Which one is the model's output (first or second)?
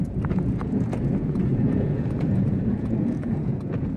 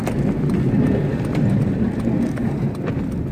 first